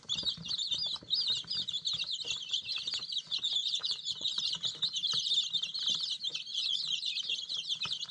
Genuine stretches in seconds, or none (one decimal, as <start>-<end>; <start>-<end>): 0.0-3.6; 4.4-6.5; 7.5-8.1